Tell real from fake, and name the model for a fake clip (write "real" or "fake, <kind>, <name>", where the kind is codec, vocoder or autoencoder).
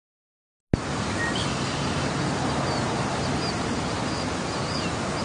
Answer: real